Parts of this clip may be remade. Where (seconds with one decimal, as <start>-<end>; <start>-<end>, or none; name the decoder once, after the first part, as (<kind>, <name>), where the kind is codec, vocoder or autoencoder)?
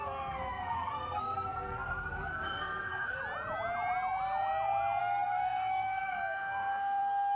0.0-3.2 (codec, SNAC); 5.0-7.4